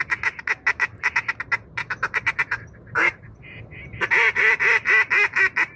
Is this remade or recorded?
recorded